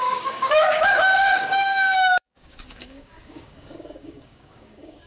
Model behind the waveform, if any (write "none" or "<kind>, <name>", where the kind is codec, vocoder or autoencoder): codec, DAC